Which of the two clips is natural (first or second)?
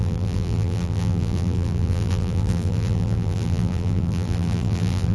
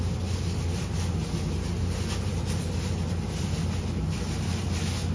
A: second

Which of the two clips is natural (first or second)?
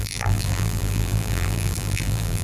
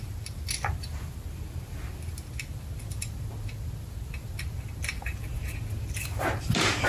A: second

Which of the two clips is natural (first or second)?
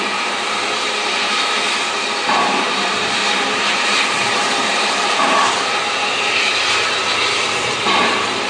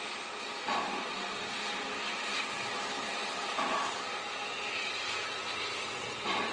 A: second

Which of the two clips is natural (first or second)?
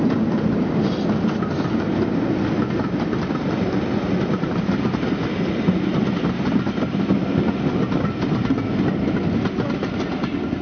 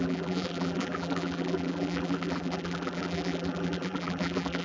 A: first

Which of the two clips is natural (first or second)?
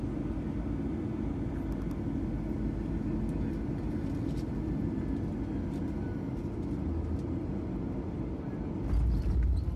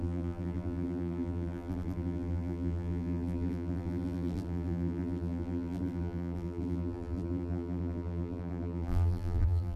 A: first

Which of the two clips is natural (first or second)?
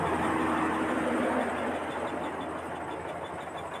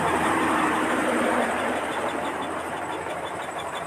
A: first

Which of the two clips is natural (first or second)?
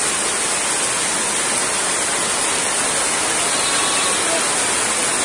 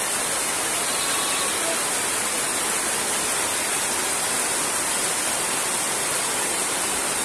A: first